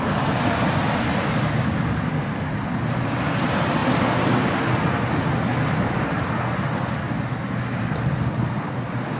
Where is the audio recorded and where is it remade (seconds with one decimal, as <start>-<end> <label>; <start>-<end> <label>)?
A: 0.0-9.2 recorded